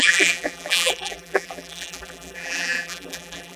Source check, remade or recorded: remade